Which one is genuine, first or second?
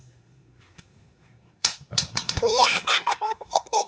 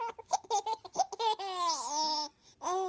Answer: second